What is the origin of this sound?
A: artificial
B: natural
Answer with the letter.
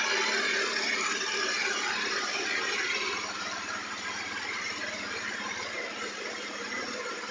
A